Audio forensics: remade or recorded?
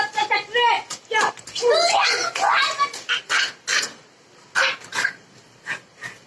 recorded